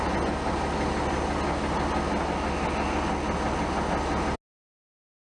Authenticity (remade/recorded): recorded